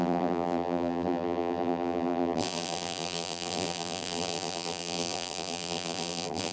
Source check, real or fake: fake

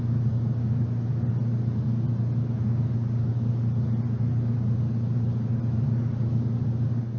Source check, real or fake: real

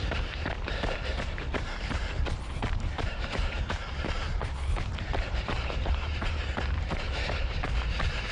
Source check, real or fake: fake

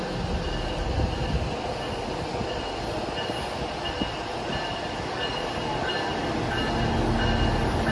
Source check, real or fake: real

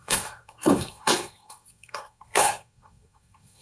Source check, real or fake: fake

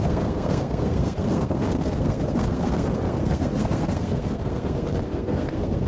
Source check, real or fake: fake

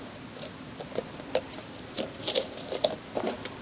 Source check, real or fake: real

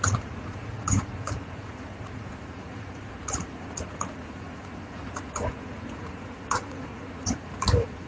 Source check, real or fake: fake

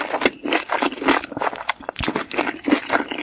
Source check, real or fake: real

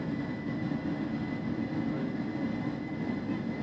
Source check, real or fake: real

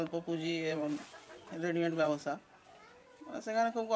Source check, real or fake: fake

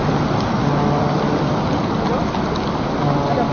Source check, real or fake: real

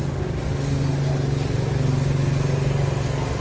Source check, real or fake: real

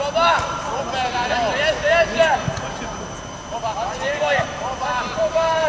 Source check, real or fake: fake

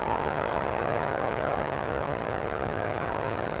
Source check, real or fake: fake